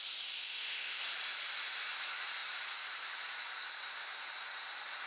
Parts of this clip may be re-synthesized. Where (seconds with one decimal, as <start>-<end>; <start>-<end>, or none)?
0.4-1.0